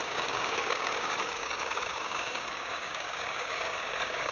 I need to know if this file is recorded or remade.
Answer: remade